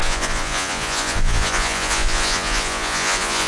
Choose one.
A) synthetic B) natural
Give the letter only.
A